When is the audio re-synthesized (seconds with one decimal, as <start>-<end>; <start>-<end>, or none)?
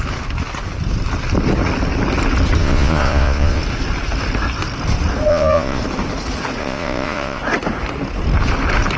2.6-3.6; 5.3-5.8; 6.6-7.4